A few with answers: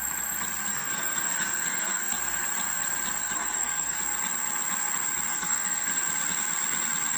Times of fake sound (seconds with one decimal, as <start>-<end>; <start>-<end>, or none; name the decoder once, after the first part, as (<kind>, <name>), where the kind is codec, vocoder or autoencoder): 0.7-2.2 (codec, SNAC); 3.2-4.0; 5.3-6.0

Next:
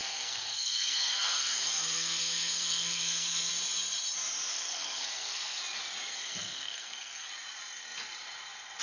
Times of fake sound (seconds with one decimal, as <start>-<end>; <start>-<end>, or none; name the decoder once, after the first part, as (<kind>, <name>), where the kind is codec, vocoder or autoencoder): 0.0-3.5 (codec, SNAC); 4.5-5.6; 6.1-7.3

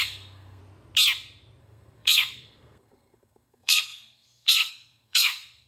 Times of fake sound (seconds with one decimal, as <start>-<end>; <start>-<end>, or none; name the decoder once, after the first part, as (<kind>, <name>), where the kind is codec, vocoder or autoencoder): 0.0-0.6 (codec, SNAC); 1.6-5.7

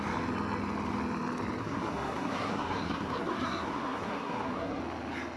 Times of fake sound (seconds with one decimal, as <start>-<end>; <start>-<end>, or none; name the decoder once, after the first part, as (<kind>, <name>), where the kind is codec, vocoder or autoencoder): 1.6-4.8 (codec, SNAC)

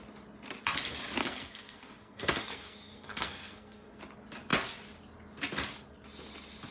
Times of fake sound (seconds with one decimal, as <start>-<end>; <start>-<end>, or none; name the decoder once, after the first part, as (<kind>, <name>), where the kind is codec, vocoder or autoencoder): 1.2-4.0 (codec, SNAC)